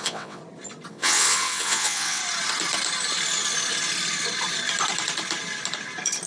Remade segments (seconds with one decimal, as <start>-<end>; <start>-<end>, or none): 0.0-0.4; 0.9-2.2